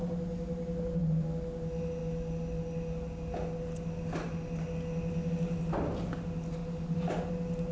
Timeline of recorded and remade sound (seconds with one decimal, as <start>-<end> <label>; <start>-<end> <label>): 0.0-7.7 recorded